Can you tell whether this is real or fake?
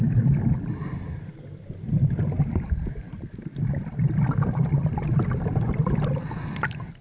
real